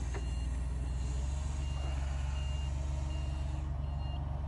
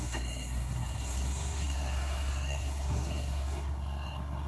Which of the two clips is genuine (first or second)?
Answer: first